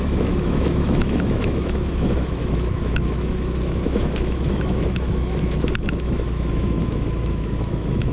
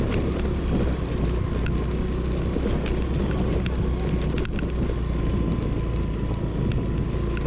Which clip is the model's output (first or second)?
first